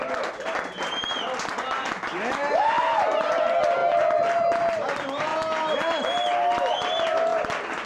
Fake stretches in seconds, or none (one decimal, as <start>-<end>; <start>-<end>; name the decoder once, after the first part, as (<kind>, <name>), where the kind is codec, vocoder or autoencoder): none